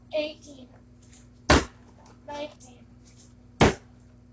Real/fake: real